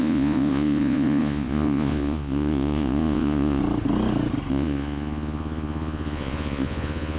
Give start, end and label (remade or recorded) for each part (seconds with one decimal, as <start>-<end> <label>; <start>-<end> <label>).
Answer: 0.0-3.6 remade; 3.6-4.5 recorded; 4.5-7.2 remade